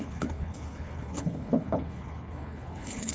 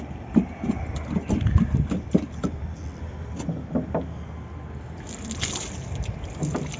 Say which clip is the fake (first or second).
first